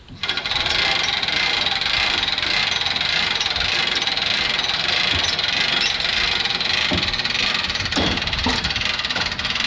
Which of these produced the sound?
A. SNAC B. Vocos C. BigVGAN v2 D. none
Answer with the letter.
D